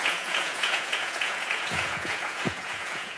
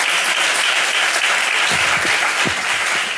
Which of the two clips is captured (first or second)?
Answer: second